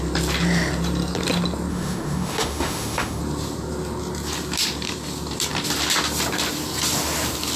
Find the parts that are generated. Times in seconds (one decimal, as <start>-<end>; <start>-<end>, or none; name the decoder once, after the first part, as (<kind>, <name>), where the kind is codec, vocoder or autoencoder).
1.7-3.2 (autoencoder, DAC-VAE)